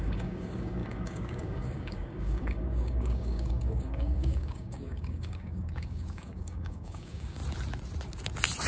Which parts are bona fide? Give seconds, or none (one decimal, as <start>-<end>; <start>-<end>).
7.4-8.7